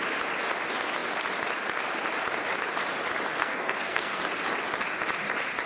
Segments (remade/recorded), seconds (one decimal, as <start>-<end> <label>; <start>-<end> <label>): 0.0-3.4 recorded; 3.4-4.2 remade; 4.2-5.7 recorded